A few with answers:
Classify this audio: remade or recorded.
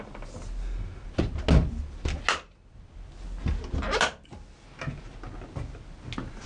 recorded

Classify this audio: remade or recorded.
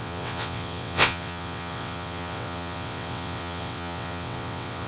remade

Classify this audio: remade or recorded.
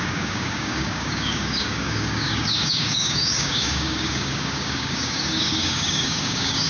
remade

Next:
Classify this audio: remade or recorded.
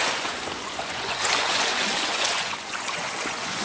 remade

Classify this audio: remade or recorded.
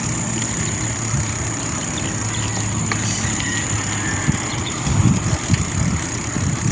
recorded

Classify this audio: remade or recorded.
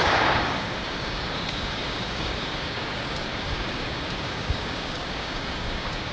remade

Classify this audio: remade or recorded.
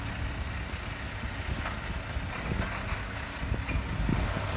recorded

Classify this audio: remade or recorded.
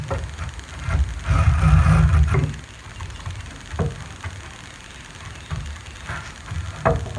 recorded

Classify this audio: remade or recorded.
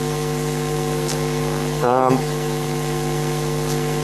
remade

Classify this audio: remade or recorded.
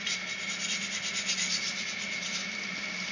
recorded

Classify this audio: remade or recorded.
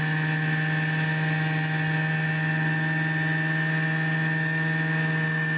recorded